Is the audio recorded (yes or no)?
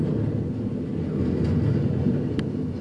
yes